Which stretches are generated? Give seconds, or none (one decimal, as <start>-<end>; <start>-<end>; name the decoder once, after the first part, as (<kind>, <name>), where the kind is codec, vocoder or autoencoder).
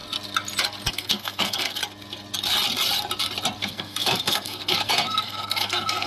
0.9-1.8 (codec, SNAC); 3.6-6.1